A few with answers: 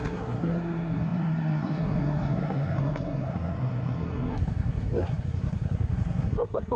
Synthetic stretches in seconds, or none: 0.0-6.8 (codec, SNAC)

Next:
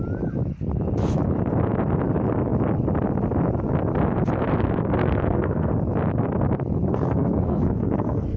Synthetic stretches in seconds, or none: 5.0-5.7 (codec, SNAC); 6.9-8.4

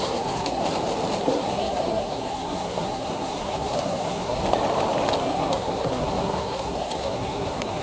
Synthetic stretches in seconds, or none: 0.0-0.6 (codec, SNAC); 1.2-4.4; 5.2-7.8

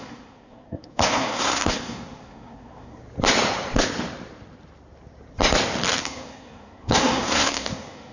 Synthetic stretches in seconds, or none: 0.0-3.0 (codec, SNAC); 6.0-8.1